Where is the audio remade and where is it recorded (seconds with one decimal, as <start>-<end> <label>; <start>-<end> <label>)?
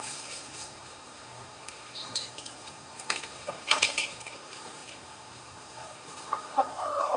0.0-7.2 remade